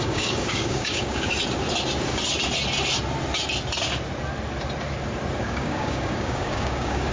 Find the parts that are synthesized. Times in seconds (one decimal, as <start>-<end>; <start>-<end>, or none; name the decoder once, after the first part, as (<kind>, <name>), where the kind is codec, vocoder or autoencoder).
0.0-1.3 (codec, DAC); 5.4-7.1